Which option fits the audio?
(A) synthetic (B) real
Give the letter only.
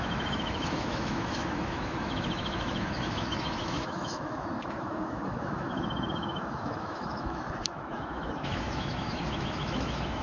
A